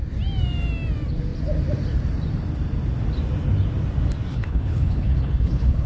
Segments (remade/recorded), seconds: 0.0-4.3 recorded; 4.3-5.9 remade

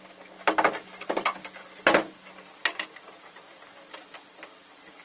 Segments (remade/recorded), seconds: 0.0-5.0 recorded

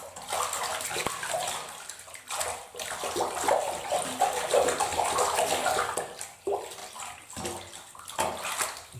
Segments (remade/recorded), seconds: 0.0-9.0 recorded

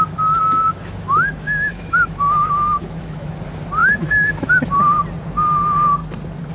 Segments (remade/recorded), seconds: 0.0-0.4 recorded; 0.4-3.3 remade; 3.3-3.8 recorded; 3.8-4.7 remade; 4.7-6.5 recorded

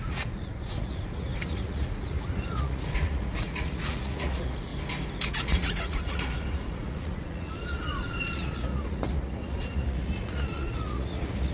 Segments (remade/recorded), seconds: 0.0-4.7 remade; 4.7-5.3 recorded; 5.3-11.5 remade